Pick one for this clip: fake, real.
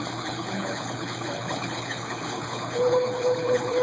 fake